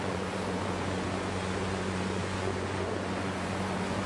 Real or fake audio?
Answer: fake